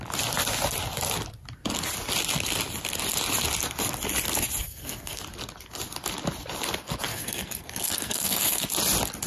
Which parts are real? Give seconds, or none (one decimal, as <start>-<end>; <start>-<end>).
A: 0.0-4.6; 5.2-7.1; 8.7-9.3